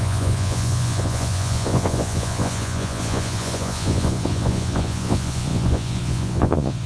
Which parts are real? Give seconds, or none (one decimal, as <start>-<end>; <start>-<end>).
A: none